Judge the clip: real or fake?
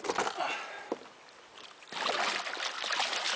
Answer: real